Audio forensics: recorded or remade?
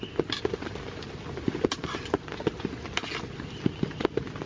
recorded